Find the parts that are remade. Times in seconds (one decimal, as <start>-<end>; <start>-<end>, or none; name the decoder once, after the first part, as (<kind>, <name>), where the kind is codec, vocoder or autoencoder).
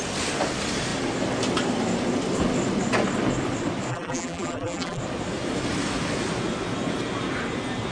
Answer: 3.9-5.0 (vocoder, BigVGAN v2)